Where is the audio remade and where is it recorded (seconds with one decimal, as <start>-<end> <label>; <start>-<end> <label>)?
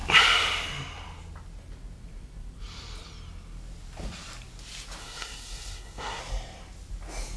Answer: 0.0-5.0 recorded; 5.0-6.2 remade; 6.2-7.4 recorded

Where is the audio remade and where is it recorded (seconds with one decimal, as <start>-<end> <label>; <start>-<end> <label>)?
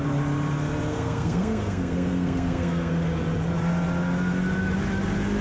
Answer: 0.0-0.9 recorded; 0.9-2.9 remade; 2.9-5.4 recorded